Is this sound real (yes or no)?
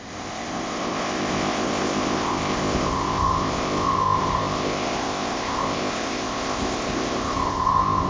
no